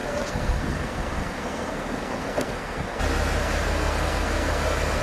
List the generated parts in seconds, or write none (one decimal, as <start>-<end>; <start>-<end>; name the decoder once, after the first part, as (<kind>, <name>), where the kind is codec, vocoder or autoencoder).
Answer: 0.0-3.0 (codec, SNAC); 3.4-5.0